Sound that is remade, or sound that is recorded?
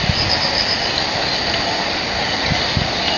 recorded